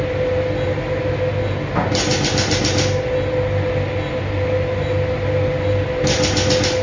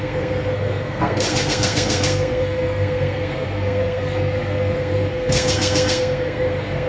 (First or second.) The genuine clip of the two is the first